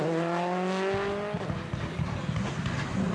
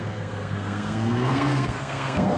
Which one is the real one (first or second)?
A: first